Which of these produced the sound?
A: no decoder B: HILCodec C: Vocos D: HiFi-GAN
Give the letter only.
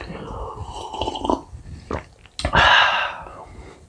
A